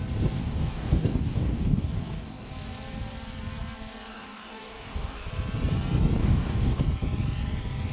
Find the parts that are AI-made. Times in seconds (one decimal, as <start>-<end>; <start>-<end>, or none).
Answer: 0.4-2.5; 4.1-5.3; 6.2-6.8